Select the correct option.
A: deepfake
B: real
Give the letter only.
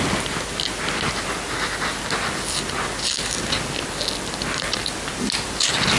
B